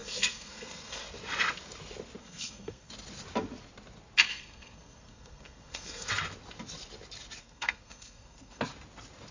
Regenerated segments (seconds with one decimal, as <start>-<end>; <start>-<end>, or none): 0.0-1.0; 2.2-2.9; 4.3-6.1; 7.4-8.6

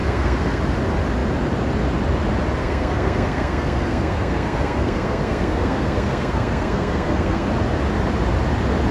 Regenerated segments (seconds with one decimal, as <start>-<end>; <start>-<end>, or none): 0.0-0.6; 2.6-7.5

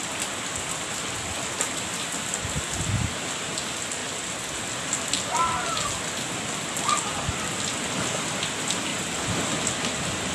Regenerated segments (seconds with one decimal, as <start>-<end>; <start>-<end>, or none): none

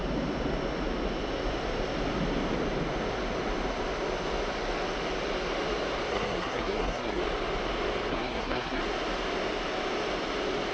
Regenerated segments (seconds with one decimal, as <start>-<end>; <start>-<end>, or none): 6.1-7.2; 8.1-8.8

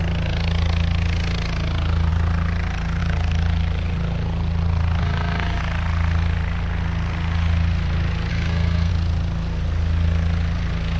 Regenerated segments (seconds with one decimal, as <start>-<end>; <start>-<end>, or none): 5.0-5.6; 8.3-8.9

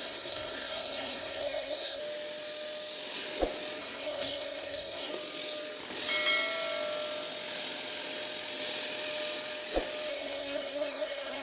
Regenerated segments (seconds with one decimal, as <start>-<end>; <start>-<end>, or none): 0.0-2.0; 3.8-5.1; 10.1-11.4

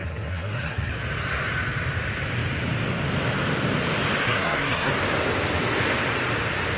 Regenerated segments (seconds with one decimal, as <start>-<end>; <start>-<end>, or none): 0.0-0.9; 4.2-4.9

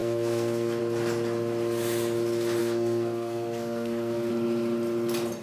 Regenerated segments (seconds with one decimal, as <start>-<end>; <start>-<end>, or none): 0.0-0.8; 2.6-4.3